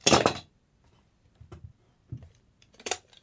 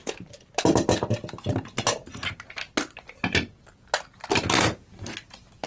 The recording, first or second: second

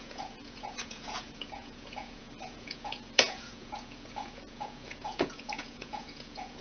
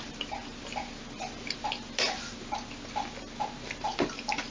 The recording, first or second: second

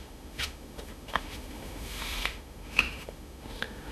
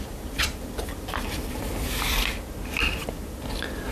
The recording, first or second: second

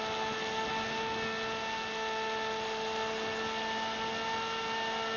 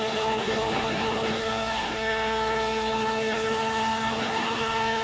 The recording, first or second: first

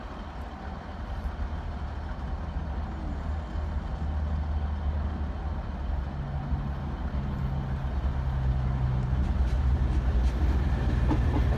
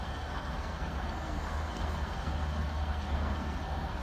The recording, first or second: first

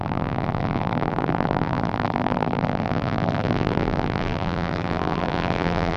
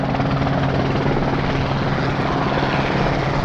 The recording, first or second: second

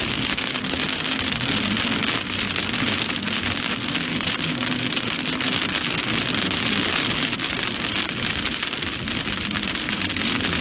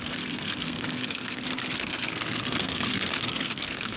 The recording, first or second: first